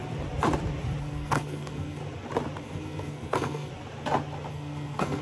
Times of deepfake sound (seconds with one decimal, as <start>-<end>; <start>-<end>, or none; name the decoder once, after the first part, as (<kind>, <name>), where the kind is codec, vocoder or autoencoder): 1.0-2.0 (codec, SNAC); 2.6-3.7; 4.5-5.2